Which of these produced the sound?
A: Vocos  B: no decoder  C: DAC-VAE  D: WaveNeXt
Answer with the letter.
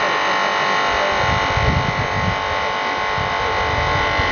B